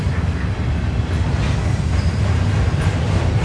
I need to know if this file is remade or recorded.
recorded